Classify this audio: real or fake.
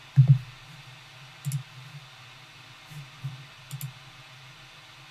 real